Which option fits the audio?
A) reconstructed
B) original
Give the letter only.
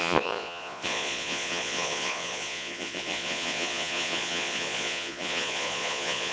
A